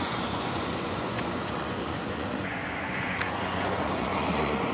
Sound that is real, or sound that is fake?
fake